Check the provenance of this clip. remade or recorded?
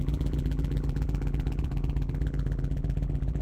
remade